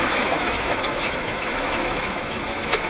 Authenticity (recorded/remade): remade